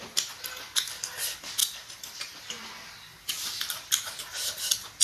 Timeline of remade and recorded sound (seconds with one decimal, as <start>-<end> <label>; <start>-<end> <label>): 0.0-1.6 recorded; 1.6-4.6 remade; 4.6-5.0 recorded